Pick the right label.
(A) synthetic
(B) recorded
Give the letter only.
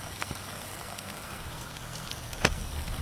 A